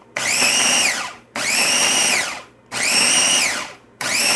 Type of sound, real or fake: fake